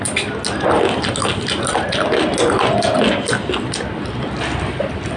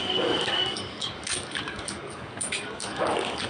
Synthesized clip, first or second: second